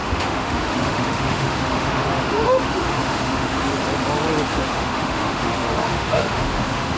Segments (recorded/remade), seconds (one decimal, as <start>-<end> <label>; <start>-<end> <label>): 0.0-3.7 remade; 3.7-4.5 recorded; 4.5-7.0 remade